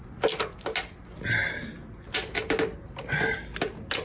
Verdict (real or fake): real